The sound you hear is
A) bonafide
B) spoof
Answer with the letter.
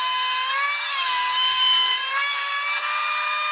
B